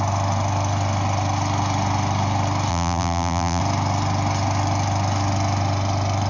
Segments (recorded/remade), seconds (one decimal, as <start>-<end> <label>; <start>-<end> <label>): 0.0-2.7 recorded; 2.7-3.6 remade; 3.6-6.3 recorded